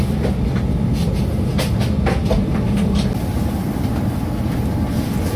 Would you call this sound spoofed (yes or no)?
no